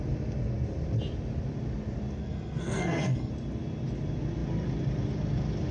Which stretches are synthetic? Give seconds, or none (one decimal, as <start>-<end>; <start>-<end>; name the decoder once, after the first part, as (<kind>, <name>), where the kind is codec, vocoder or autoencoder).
2.2-3.3 (codec, SNAC)